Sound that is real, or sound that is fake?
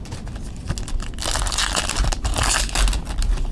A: real